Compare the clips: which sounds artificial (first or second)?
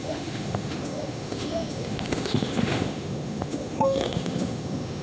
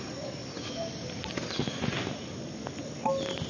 first